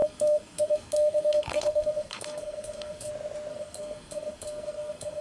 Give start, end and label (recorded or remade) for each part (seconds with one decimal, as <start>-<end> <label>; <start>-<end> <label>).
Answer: 0.0-3.1 remade; 3.1-3.5 recorded; 3.5-5.2 remade